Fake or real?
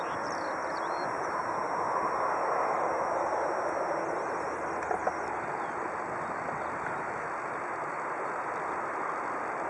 real